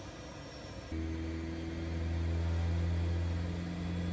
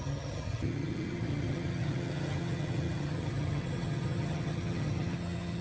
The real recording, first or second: first